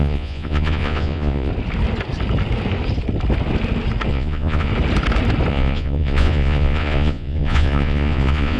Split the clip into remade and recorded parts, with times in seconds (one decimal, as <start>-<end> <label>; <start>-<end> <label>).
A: 0.0-1.5 remade; 1.5-4.1 recorded; 4.1-4.7 remade; 4.7-5.5 recorded; 5.5-8.6 remade